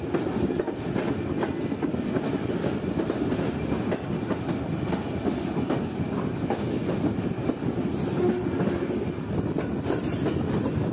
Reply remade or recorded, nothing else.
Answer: recorded